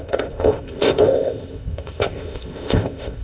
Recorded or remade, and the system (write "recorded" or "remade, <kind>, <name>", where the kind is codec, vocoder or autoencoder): remade, codec, ZipCodec